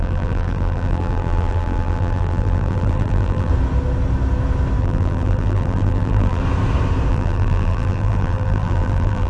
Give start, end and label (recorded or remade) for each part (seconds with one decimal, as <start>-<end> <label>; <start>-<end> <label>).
0.0-3.5 remade; 3.5-4.8 recorded; 4.8-6.4 remade; 6.4-7.1 recorded; 7.1-9.3 remade